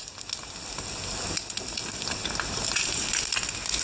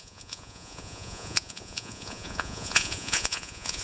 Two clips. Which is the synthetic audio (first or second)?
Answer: second